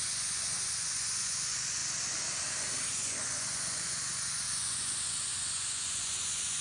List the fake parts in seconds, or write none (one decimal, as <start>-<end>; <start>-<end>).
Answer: 0.0-1.8; 2.9-6.6